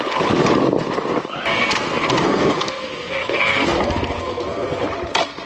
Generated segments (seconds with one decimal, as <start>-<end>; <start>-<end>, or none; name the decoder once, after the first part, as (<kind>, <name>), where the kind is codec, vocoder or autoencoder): 1.5-4.8 (codec, SNAC)